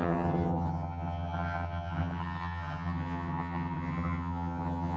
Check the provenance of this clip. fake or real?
fake